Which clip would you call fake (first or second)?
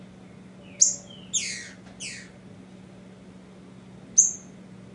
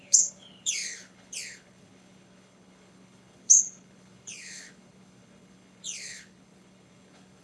second